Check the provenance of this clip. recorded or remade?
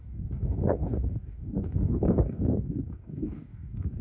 remade